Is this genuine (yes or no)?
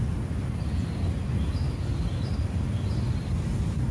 yes